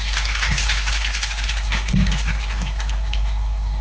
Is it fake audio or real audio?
fake